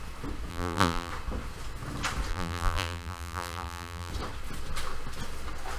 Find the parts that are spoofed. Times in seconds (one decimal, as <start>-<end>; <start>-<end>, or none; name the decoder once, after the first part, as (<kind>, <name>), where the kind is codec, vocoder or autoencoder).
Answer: 0.5-1.1 (vocoder, BigVGAN v2); 2.3-4.1